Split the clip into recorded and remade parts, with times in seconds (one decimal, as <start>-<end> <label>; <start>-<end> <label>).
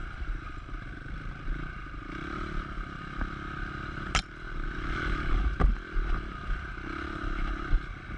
0.0-0.7 remade; 0.7-8.2 recorded